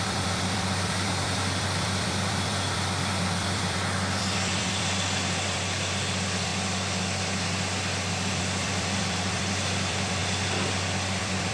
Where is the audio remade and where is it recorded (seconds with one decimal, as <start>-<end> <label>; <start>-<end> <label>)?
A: 0.0-6.5 remade; 6.5-8.4 recorded; 8.4-10.2 remade; 10.2-10.7 recorded; 10.7-11.5 remade